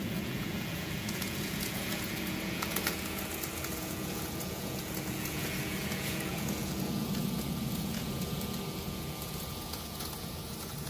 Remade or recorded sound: remade